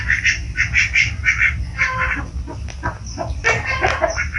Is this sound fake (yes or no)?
no